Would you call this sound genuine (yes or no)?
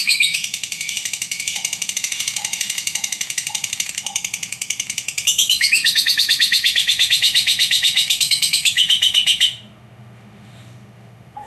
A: no